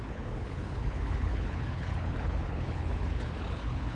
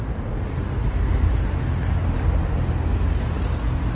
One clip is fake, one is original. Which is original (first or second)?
second